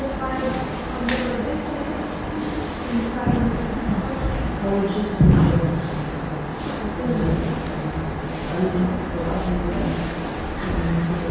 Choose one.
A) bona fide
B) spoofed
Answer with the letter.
A